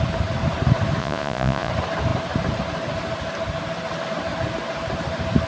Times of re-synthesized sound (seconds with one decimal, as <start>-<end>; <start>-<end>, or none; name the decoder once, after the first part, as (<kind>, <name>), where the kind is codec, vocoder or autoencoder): 1.0-1.7 (vocoder, Vocos)